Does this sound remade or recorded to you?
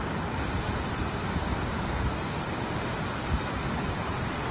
recorded